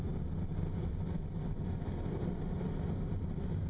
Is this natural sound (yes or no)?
yes